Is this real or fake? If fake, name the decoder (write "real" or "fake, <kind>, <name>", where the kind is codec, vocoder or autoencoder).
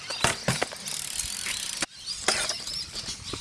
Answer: fake, vocoder, BigVGAN v2